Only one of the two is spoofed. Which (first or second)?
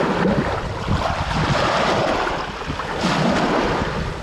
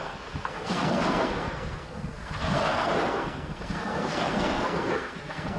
second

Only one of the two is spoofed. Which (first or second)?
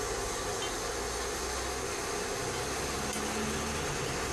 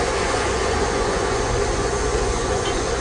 second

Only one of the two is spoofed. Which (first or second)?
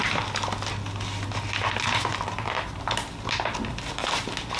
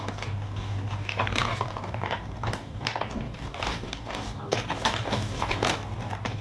second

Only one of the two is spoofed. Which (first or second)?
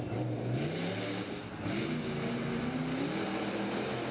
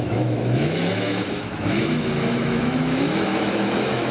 second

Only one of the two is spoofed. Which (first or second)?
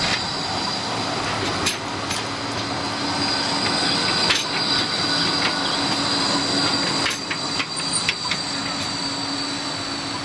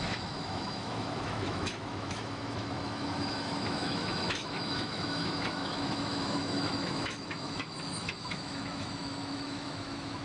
second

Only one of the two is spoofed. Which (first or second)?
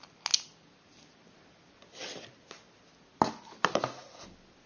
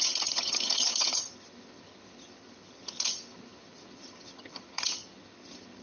second